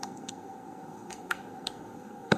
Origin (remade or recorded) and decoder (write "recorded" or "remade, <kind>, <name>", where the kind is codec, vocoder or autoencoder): remade, codec, SNAC